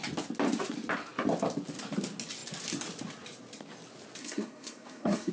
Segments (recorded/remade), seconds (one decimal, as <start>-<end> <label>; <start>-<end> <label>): 0.0-4.2 recorded; 4.2-5.3 remade